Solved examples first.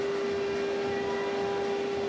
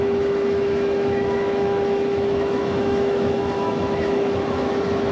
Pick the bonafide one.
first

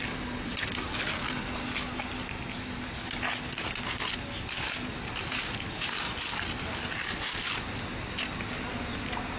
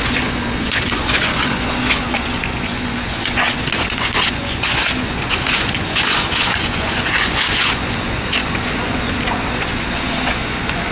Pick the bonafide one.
first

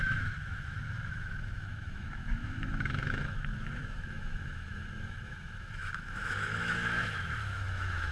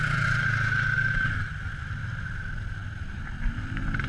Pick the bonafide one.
second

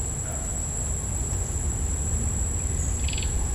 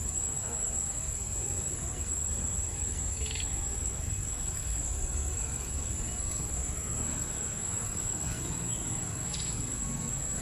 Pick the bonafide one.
first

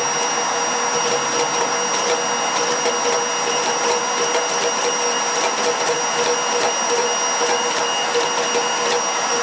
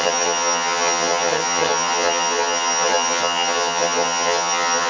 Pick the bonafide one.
first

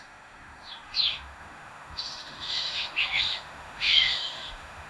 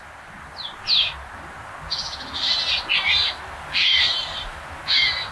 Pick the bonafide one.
second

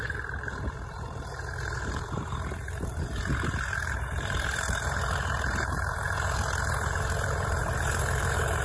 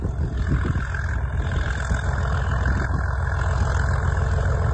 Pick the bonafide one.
second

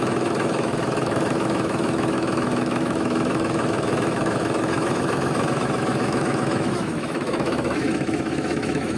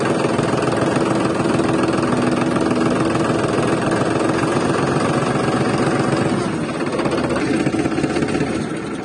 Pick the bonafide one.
second